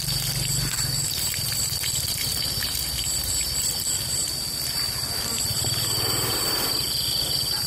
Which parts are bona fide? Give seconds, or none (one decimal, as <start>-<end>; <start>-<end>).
none